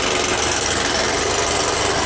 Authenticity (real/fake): real